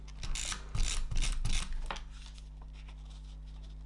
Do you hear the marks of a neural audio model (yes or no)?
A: no